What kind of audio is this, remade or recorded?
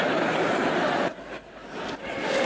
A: recorded